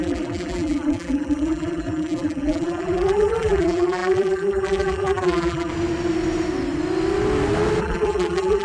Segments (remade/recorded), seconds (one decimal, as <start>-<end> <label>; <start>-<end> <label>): 0.0-5.7 remade; 5.7-7.8 recorded; 7.8-8.6 remade